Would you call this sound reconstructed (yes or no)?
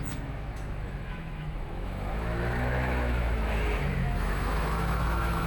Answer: yes